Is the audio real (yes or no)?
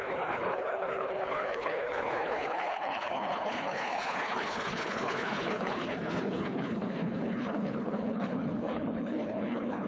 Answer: no